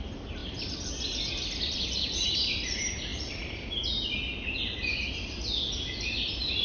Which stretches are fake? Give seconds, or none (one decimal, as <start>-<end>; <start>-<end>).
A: none